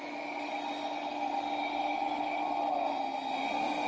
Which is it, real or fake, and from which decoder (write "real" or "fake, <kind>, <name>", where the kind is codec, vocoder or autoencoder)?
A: real